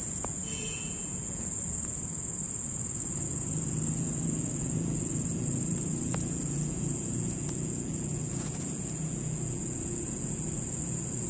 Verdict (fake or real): fake